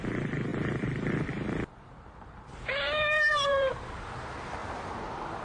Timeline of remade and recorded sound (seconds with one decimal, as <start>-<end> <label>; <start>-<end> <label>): 0.0-0.5 recorded; 0.5-3.7 remade; 3.7-5.4 recorded